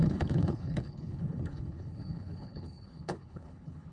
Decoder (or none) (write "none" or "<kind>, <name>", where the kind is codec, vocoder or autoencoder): codec, HILCodec